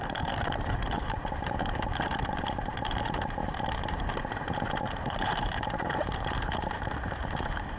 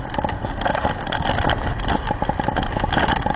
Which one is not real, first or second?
first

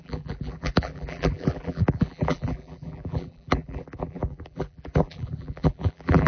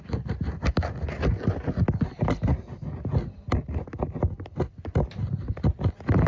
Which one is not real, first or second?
first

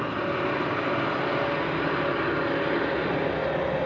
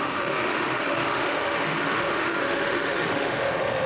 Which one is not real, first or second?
second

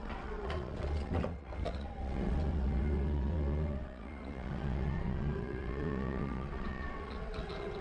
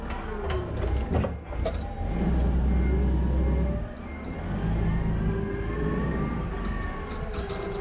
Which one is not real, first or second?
first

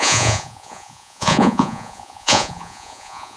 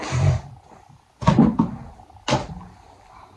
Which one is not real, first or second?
first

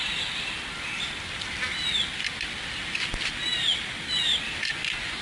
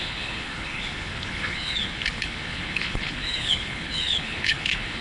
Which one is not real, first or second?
second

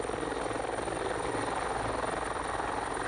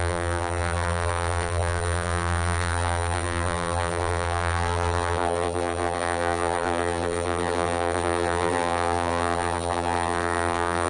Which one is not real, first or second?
second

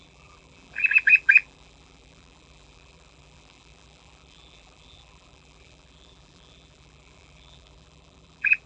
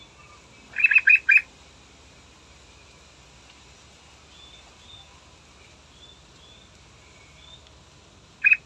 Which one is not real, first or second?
first